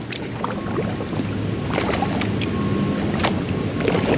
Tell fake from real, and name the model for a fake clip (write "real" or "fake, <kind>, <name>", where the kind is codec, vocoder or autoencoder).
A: real